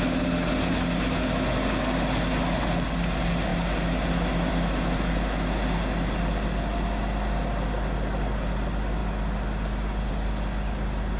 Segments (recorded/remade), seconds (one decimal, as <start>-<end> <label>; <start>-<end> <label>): 0.0-11.2 recorded